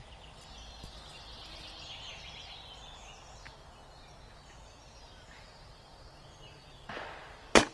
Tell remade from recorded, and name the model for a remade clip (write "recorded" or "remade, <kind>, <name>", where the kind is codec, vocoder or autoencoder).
remade, vocoder, BigVGAN v2